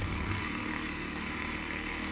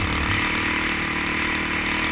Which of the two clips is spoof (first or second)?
first